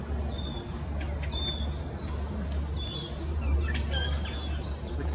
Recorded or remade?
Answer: recorded